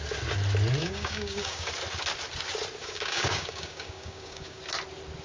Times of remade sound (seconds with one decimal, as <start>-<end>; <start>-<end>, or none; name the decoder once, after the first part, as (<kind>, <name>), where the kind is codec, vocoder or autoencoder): 0.8-1.7 (codec, DAC); 2.8-4.6